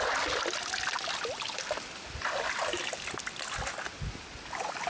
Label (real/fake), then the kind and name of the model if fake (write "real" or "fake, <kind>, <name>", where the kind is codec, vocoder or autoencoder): real